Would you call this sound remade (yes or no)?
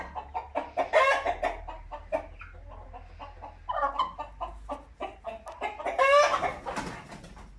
no